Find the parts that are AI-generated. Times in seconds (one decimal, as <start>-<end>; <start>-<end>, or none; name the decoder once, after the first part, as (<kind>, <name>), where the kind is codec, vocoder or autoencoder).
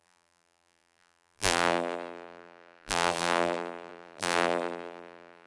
0.0-5.5 (vocoder, BigVGAN v2)